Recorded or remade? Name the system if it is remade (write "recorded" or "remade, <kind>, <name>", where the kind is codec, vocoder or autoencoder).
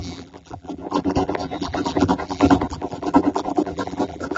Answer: remade, vocoder, BigVGAN v2